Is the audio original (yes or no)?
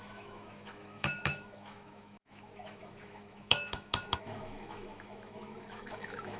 no